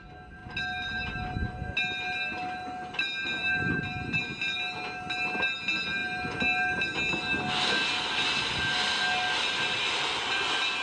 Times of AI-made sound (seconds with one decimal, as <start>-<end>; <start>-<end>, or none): none